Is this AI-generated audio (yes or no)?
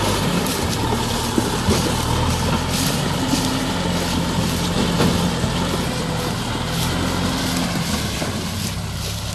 no